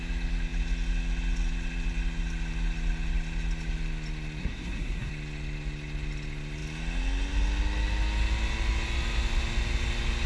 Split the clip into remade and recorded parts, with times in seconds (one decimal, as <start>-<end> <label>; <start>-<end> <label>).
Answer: 0.0-4.4 recorded; 4.4-5.1 remade; 5.1-10.3 recorded